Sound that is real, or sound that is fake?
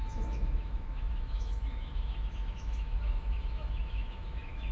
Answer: fake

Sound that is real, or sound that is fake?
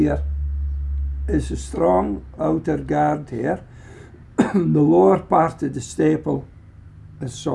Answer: real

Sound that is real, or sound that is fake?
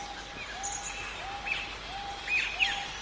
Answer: real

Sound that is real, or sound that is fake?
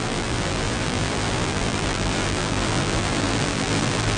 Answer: fake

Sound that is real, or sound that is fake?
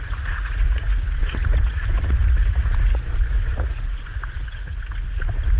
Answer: fake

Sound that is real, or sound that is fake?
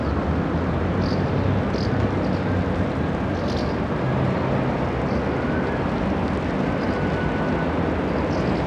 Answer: real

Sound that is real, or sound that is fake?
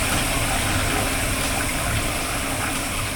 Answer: real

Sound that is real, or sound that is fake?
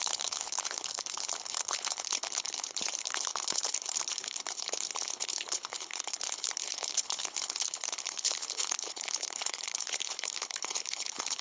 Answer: fake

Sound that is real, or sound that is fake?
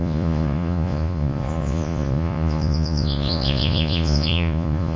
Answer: fake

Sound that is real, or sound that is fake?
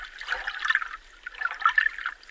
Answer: real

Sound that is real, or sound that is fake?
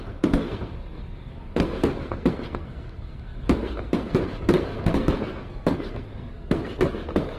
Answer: fake